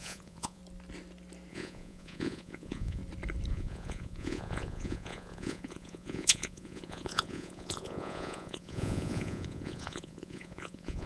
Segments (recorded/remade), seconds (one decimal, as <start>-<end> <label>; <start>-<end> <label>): 0.0-0.6 remade; 0.6-1.5 recorded; 1.5-3.0 remade; 3.0-3.5 recorded; 3.5-11.1 remade